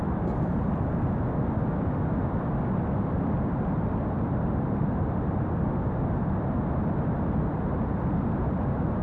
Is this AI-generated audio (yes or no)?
no